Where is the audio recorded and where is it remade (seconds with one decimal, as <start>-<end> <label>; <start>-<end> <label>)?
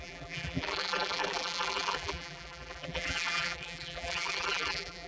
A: 0.0-5.1 remade